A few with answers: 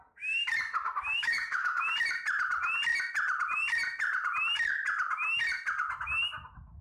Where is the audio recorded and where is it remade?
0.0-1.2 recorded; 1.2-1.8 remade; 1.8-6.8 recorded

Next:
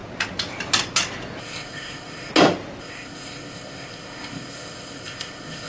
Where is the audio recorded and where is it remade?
0.0-1.4 recorded; 1.4-2.3 remade; 2.3-2.8 recorded; 2.8-5.7 remade